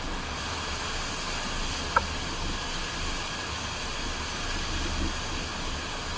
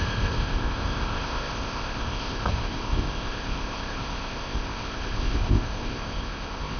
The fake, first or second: second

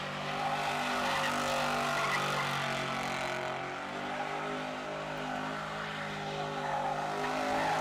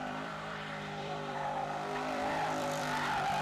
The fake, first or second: second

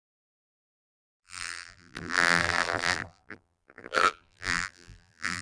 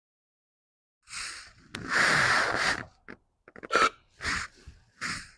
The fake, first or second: first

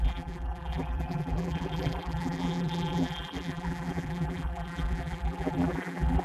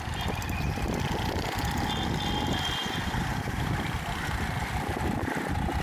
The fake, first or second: first